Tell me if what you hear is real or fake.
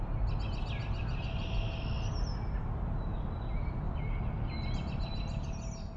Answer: real